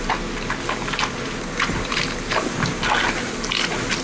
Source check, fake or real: real